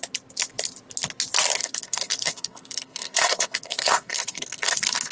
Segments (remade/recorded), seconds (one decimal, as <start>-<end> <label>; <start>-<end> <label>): 0.0-1.6 recorded; 1.6-5.1 remade